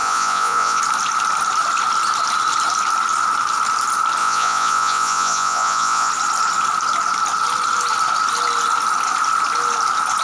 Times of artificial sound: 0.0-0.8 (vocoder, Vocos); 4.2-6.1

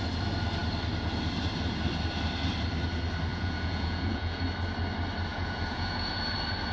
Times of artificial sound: 3.3-4.4 (vocoder, Vocos); 5.3-6.2